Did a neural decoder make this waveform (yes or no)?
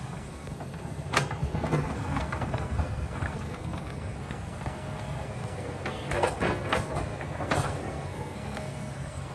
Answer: yes